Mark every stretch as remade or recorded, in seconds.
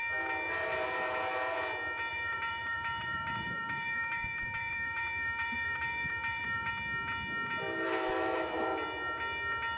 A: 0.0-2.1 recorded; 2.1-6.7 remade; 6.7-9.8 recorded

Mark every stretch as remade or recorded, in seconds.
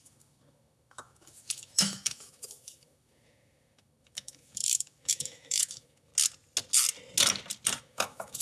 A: 0.0-6.1 remade; 6.1-7.8 recorded; 7.8-8.4 remade